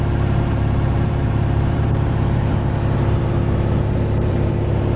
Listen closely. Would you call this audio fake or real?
fake